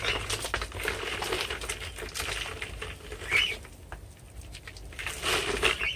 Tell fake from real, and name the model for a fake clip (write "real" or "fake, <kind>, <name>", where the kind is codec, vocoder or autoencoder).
real